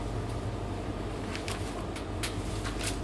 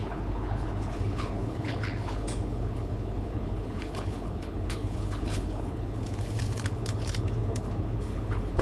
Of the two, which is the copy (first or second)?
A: second